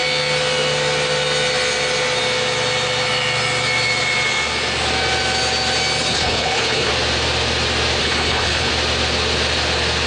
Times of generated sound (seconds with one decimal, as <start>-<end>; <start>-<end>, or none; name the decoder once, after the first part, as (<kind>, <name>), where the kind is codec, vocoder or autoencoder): 6.1-6.9 (codec, HILCodec); 8.0-8.7